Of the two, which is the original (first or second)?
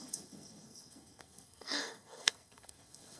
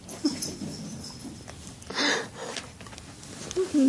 second